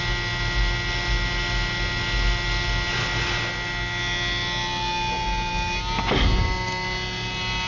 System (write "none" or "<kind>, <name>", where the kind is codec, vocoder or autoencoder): none